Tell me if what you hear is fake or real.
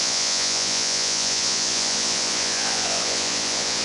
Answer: fake